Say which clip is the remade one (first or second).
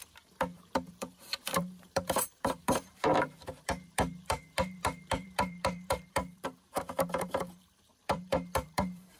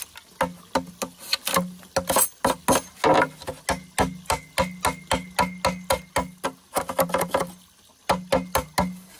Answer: first